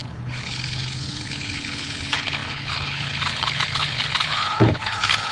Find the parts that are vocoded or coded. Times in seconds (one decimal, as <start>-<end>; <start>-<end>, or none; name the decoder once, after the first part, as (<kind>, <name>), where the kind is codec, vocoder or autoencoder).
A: 0.0-5.3 (codec, HILCodec)